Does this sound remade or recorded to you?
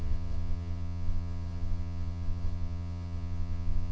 remade